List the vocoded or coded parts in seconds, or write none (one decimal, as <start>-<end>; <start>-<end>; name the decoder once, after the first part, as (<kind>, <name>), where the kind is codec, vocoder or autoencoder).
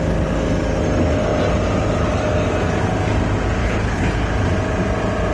3.6-4.3 (codec, HILCodec)